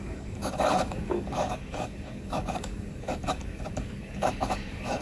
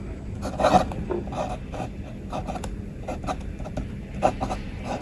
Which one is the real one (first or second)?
second